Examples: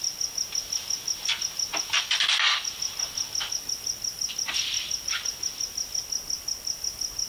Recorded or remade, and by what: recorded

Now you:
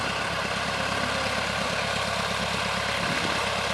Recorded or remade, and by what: recorded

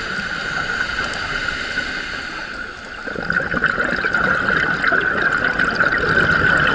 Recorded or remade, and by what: recorded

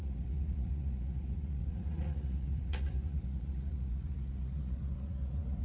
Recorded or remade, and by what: remade, vocoder, Vocos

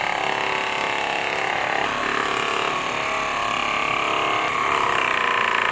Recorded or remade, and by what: recorded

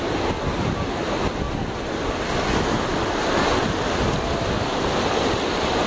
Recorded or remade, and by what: recorded